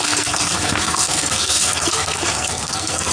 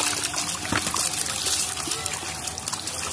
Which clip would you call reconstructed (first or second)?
first